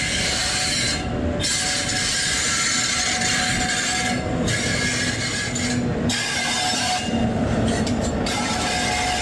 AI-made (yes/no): no